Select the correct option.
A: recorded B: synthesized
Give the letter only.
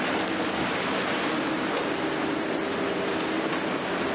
A